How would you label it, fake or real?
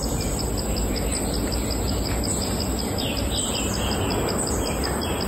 real